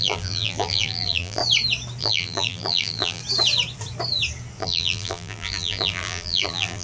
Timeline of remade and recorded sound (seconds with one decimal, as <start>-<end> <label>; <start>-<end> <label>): 0.0-1.4 remade; 1.4-2.0 recorded; 2.0-3.2 remade; 3.2-4.6 recorded; 4.6-6.8 remade